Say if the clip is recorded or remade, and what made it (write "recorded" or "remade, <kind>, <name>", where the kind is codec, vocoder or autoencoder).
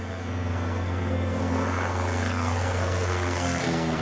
remade, codec, SNAC